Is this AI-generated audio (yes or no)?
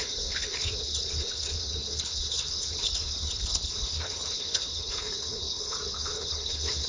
yes